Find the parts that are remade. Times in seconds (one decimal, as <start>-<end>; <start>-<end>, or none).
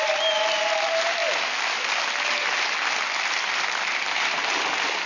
none